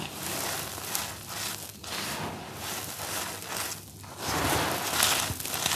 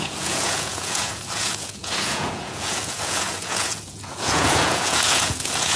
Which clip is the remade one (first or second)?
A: second